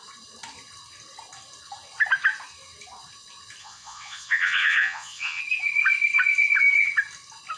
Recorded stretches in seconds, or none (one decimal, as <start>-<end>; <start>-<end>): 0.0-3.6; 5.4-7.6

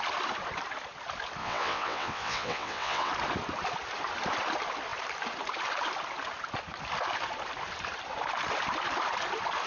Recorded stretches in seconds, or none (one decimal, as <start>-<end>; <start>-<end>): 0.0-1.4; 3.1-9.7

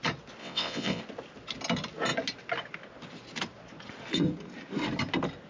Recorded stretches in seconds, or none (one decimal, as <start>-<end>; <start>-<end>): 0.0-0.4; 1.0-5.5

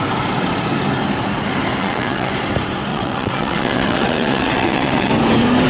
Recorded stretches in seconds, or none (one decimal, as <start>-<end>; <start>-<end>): 0.0-1.8; 2.3-2.9; 5.1-5.7

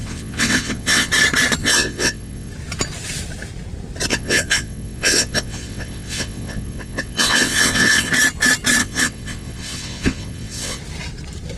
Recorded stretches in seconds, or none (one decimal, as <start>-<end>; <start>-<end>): 1.1-1.6; 2.5-4.1; 8.1-8.8; 10.8-11.6

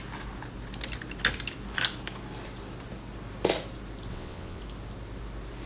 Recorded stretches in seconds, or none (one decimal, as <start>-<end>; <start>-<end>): 0.0-4.1; 4.6-5.7

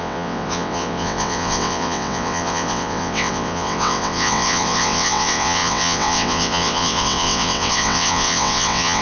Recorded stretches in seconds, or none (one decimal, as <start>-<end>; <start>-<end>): none

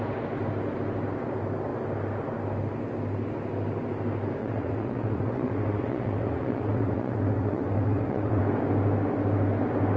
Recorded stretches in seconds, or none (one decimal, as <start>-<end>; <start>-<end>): 0.0-4.4; 8.4-10.0